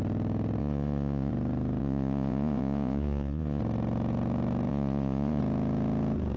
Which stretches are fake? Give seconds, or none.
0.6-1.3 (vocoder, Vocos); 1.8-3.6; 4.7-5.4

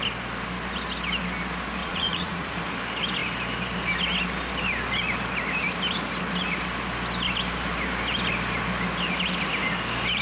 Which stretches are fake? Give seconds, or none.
1.8-2.6 (vocoder, Vocos)

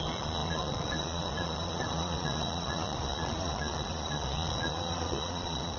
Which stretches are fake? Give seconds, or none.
0.0-5.8 (vocoder, Vocos)

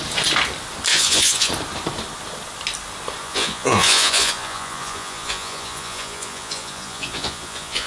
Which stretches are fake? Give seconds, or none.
0.9-1.5 (vocoder, Vocos); 3.2-7.9